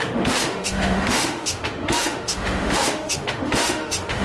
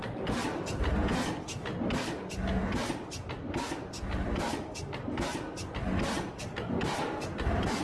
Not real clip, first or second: first